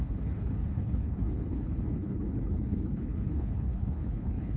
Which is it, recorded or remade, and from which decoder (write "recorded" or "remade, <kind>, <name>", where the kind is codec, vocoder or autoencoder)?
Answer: remade, codec, HILCodec